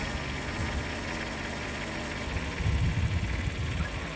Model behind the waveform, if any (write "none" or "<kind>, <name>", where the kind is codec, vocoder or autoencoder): none